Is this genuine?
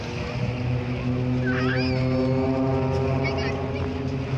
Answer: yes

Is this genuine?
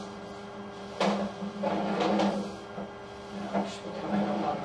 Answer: yes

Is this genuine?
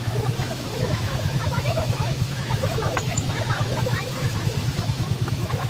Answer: no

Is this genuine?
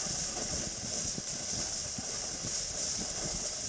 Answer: yes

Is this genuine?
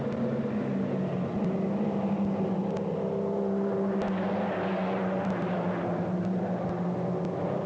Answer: yes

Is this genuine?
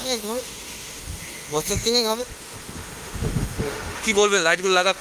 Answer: no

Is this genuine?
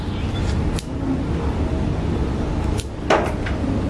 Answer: yes